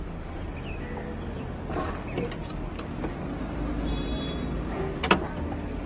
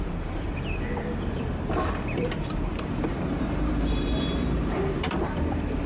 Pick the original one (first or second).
first